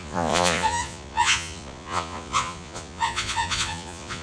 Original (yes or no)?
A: no